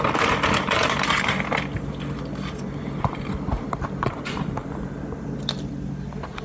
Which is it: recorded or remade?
recorded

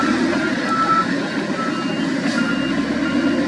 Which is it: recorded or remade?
recorded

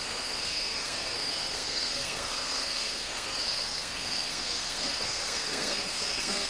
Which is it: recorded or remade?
remade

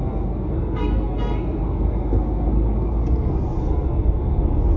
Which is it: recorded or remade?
remade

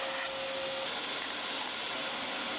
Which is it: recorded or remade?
recorded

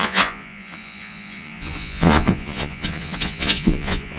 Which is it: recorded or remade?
remade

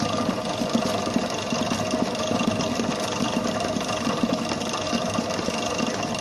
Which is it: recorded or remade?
recorded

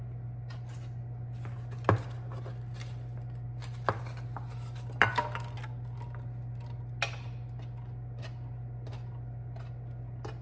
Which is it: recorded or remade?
recorded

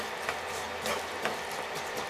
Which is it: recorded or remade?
recorded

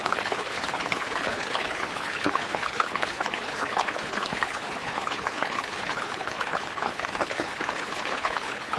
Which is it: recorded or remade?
remade